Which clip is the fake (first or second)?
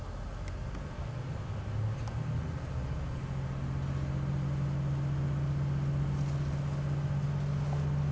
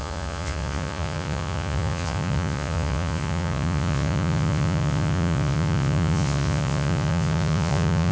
second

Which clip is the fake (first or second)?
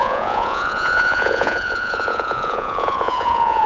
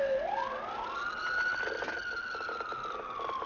first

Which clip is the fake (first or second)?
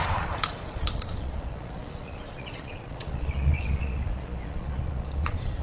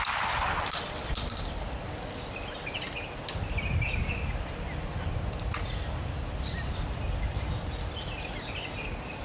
first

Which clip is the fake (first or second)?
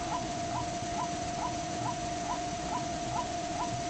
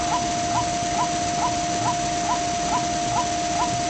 first